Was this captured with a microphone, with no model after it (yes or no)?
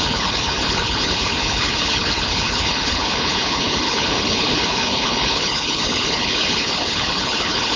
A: no